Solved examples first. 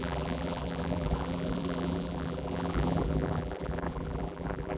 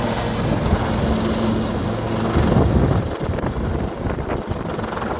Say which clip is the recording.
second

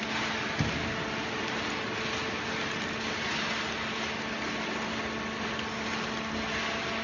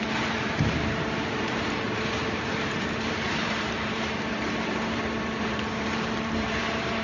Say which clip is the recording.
first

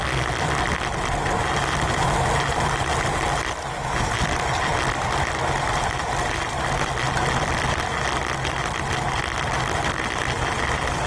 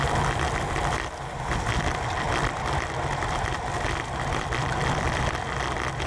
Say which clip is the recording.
first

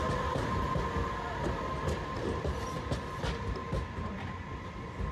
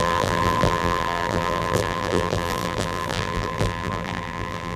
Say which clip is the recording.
first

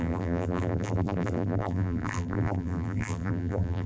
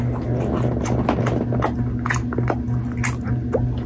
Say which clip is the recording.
second